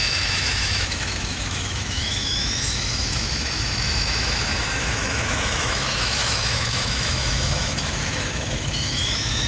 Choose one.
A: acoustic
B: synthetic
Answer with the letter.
B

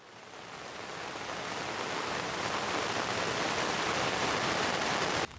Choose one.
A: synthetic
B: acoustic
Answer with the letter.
B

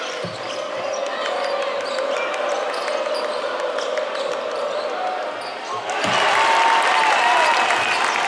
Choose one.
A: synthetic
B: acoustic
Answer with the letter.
B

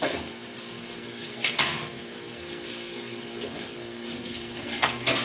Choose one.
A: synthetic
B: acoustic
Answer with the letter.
A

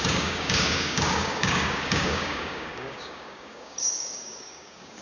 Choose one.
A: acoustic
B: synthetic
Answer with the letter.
B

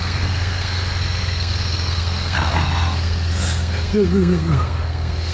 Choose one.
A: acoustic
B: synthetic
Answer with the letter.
B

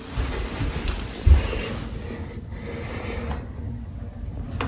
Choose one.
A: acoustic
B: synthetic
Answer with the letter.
A